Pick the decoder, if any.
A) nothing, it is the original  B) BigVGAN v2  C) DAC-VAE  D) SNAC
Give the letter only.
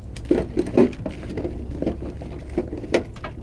A